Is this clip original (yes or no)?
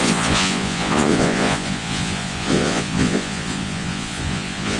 no